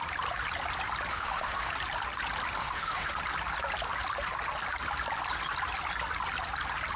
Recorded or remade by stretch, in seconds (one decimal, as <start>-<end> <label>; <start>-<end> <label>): 0.0-1.1 recorded; 1.1-1.7 remade; 1.7-2.6 recorded; 2.6-3.1 remade; 3.1-7.0 recorded